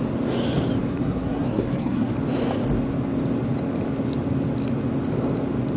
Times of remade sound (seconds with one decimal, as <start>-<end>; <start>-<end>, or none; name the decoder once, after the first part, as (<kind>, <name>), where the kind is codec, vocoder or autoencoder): 0.9-2.1 (codec, SNAC)